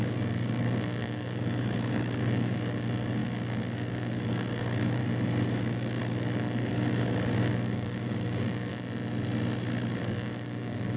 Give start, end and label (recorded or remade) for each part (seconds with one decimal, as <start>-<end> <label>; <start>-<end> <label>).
0.0-5.0 remade; 5.0-5.6 recorded; 5.6-6.0 remade; 6.0-6.7 recorded; 6.7-8.7 remade; 8.7-10.0 recorded; 10.0-11.0 remade

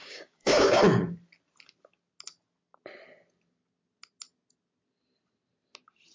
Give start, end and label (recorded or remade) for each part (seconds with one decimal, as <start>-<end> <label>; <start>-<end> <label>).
0.0-0.8 remade; 0.8-6.1 recorded

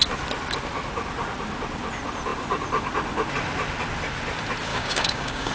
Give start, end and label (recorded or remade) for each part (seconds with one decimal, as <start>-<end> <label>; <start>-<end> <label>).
0.0-4.7 recorded; 4.7-5.5 remade

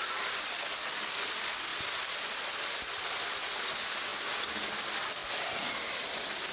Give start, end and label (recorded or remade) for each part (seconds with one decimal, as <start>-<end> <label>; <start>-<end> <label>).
0.0-6.5 recorded

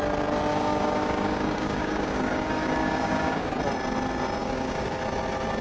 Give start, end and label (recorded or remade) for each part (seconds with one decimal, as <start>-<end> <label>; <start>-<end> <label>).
0.0-0.5 recorded; 0.5-3.5 remade; 3.5-4.4 recorded; 4.4-5.0 remade; 5.0-5.6 recorded

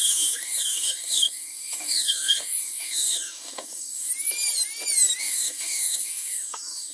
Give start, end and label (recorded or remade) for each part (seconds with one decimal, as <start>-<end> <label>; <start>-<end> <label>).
0.0-4.1 remade; 4.1-5.2 recorded; 5.2-6.9 remade

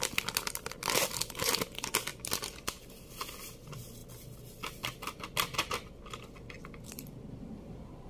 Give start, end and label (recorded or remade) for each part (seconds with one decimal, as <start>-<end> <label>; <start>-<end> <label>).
0.0-8.1 recorded

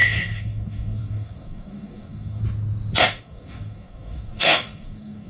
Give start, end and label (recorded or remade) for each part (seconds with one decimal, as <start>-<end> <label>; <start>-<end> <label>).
0.0-2.4 remade; 2.4-3.0 recorded; 3.0-5.3 remade